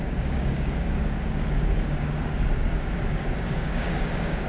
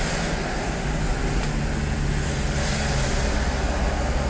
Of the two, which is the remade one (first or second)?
first